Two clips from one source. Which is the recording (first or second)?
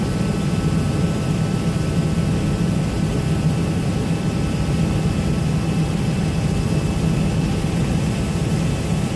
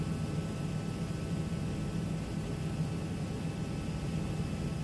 second